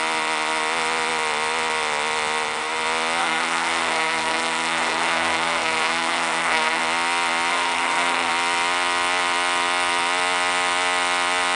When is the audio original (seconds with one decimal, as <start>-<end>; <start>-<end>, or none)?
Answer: 0.0-3.2; 6.8-7.5; 8.3-11.6